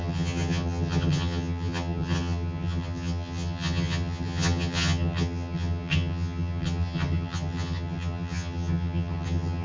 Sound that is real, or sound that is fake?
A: fake